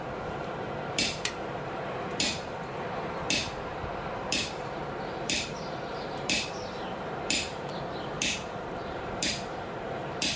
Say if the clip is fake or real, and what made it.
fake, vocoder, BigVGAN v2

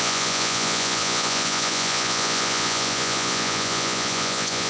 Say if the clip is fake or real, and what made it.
fake, vocoder, Vocos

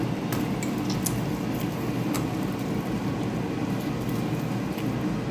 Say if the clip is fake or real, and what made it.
real